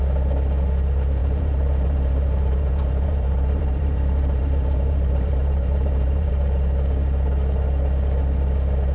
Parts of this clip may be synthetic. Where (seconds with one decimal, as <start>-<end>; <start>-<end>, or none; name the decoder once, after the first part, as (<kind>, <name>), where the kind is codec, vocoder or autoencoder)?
1.2-6.3 (vocoder, BigVGAN v2)